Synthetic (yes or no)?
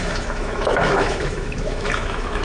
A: yes